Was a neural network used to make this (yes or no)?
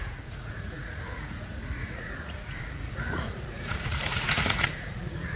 yes